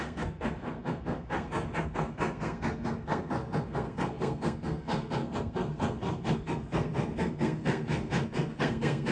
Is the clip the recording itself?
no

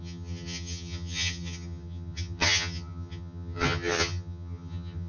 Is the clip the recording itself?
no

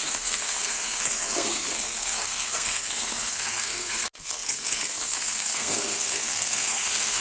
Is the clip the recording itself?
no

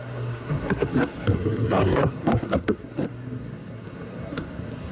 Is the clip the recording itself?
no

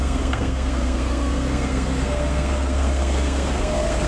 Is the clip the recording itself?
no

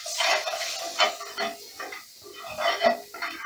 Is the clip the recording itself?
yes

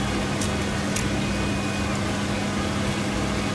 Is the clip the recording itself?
yes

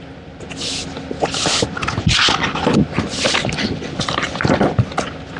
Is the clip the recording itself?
yes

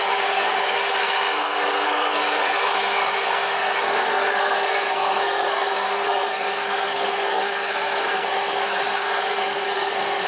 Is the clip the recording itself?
no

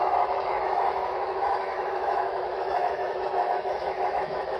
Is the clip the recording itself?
no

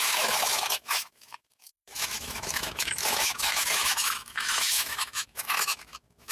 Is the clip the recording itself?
no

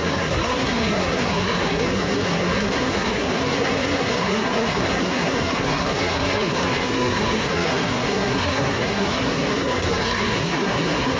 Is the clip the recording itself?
no